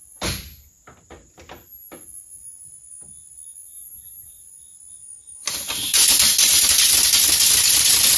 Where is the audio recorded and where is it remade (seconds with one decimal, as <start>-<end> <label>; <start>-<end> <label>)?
0.0-8.2 recorded